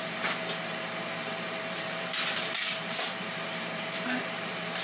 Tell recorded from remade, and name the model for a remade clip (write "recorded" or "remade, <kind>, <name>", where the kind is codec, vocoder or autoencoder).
remade, vocoder, BigVGAN v2